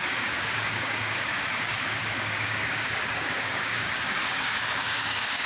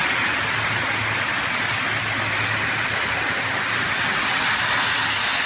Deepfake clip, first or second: first